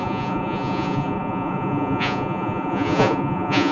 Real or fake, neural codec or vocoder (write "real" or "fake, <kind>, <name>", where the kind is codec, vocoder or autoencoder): fake, vocoder, Vocos